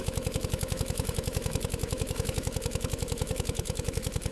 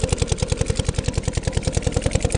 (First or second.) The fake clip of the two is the first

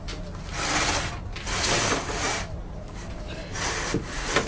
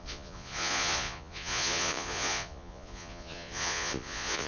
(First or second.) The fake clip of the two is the second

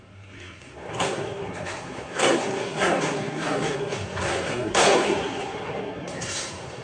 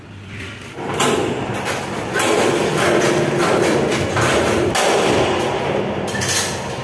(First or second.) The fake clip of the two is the first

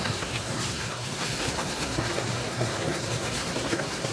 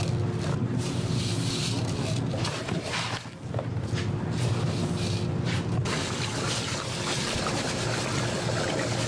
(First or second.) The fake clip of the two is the first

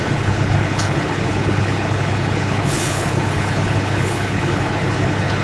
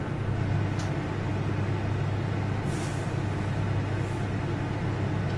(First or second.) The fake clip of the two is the first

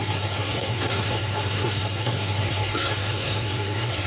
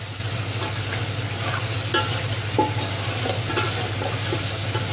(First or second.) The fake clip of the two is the first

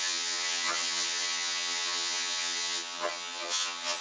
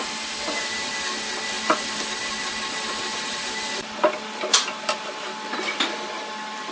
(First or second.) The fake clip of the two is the first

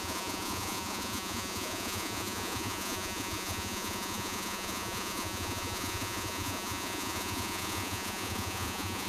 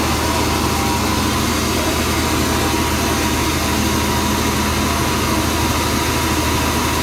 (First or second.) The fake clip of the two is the first